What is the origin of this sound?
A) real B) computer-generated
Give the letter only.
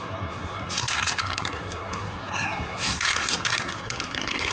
B